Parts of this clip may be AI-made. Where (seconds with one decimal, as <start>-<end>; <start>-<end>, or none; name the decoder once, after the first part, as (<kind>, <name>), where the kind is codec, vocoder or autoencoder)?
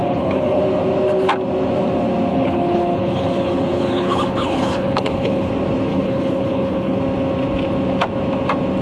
0.0-0.6 (codec, HILCodec); 2.3-5.5; 5.9-7.0